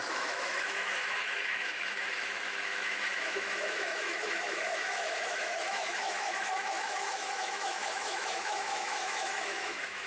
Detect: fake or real fake